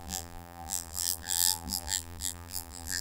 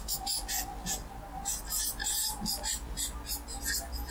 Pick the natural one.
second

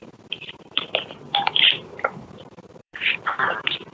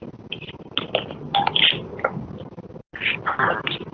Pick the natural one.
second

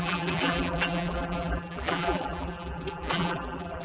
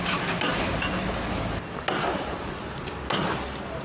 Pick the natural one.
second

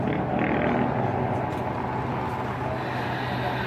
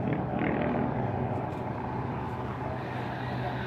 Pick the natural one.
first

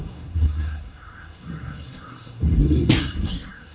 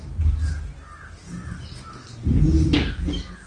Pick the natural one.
second